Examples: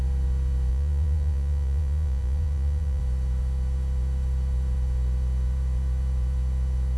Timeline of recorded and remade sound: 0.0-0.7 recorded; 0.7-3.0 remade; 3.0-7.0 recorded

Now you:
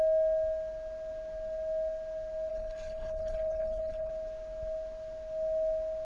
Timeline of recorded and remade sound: 0.0-2.5 recorded; 2.5-4.1 remade; 4.1-6.0 recorded

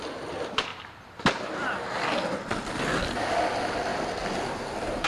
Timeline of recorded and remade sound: 0.0-5.1 recorded

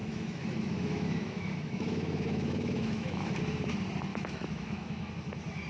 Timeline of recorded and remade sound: 0.0-3.4 remade; 3.4-4.1 recorded; 4.1-5.1 remade; 5.1-5.7 recorded

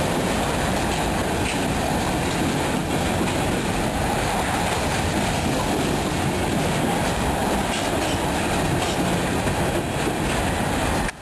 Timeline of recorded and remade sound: 0.0-11.2 recorded

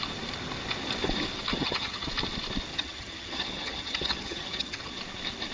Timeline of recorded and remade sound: 0.0-1.5 recorded; 1.5-2.1 remade; 2.1-2.7 recorded; 2.7-5.0 remade; 5.0-5.5 recorded

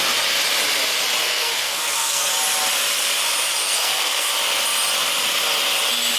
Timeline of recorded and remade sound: 0.0-1.2 recorded; 1.2-2.3 remade; 2.3-3.6 recorded; 3.6-4.3 remade; 4.3-6.2 recorded

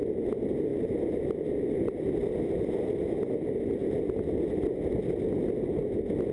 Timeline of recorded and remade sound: 0.0-0.7 recorded; 0.7-3.3 remade; 3.3-6.3 recorded